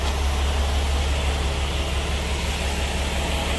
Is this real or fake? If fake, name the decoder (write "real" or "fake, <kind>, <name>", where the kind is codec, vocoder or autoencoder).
real